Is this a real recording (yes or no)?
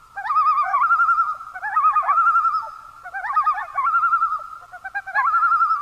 yes